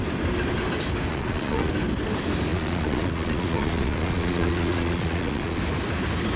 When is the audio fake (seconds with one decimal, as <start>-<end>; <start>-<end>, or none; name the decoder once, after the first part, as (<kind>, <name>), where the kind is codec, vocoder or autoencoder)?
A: 1.1-1.7 (vocoder, Vocos); 2.5-5.6